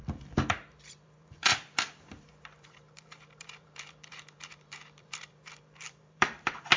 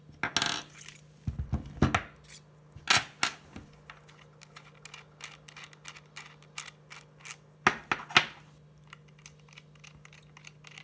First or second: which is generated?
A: first